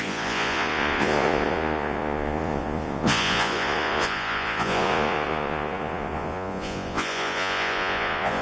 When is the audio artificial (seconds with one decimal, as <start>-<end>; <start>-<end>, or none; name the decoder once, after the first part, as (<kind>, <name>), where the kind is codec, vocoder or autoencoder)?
0.0-8.4 (vocoder, Vocos)